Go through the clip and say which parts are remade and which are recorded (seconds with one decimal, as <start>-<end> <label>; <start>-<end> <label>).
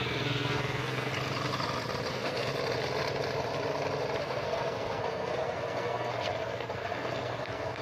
0.0-1.1 remade; 1.1-2.1 recorded; 2.1-2.5 remade; 2.5-4.2 recorded; 4.2-7.8 remade